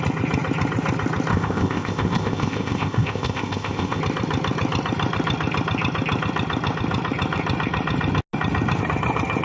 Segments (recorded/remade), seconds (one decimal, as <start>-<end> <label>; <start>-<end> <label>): 0.0-1.3 recorded; 1.3-4.0 remade; 4.0-9.4 recorded

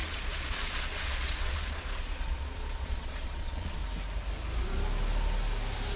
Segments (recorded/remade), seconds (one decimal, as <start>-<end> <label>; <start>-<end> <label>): 0.0-3.8 remade; 3.8-6.0 recorded

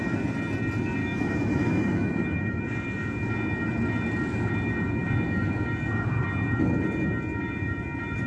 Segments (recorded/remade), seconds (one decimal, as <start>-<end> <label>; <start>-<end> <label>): 0.0-1.0 recorded; 1.0-2.6 remade; 2.6-8.3 recorded